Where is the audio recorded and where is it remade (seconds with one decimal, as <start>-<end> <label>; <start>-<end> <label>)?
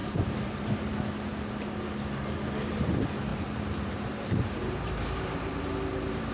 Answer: 0.0-0.9 remade; 0.9-3.3 recorded; 3.3-5.6 remade; 5.6-6.3 recorded